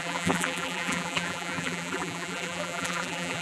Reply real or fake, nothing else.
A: fake